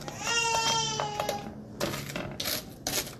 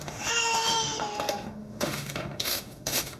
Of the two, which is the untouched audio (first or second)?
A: first